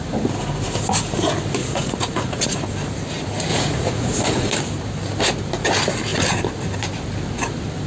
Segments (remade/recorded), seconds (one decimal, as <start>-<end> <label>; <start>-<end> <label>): 0.0-1.6 recorded; 1.6-2.6 remade; 2.6-3.5 recorded; 3.5-4.5 remade; 4.5-7.9 recorded